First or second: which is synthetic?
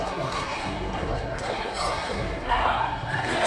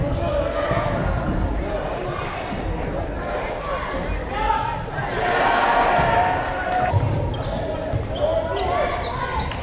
first